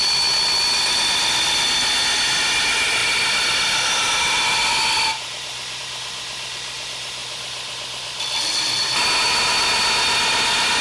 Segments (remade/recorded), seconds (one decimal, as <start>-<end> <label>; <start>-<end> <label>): 0.0-10.8 recorded